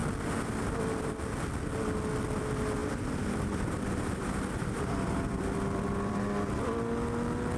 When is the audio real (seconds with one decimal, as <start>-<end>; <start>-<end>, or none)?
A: 1.4-2.8; 6.1-7.6